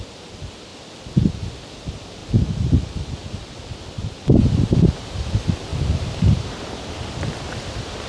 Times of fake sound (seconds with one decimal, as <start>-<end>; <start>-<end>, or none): 5.7-6.3